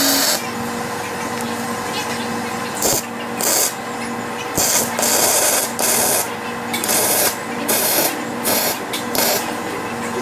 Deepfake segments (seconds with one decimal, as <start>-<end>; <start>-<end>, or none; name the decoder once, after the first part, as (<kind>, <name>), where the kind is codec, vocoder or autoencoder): 6.8-9.6 (vocoder, BigVGAN v2)